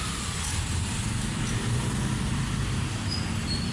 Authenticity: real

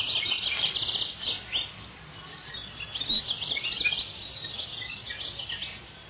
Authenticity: real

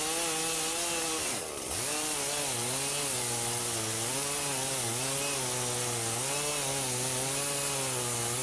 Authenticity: real